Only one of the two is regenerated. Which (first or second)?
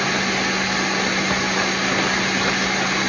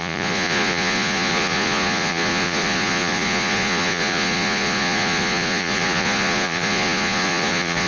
second